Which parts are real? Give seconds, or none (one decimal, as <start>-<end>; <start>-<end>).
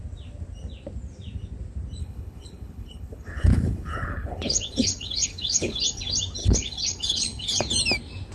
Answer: 0.0-2.0; 6.0-6.4; 7.6-8.3